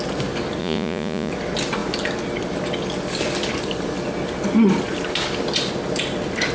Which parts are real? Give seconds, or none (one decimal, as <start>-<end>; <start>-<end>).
0.0-0.6; 1.3-6.5